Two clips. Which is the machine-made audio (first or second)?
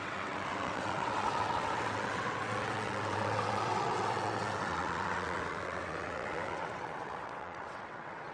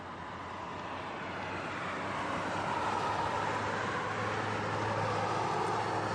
first